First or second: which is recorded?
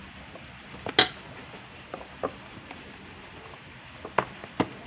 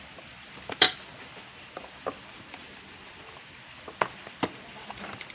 first